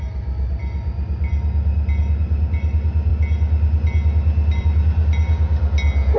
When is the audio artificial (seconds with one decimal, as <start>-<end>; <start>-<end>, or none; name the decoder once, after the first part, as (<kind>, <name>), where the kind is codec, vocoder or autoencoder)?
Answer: none